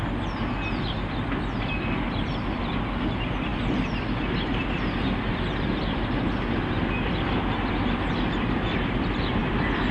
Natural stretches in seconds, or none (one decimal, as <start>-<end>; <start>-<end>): 0.0-9.9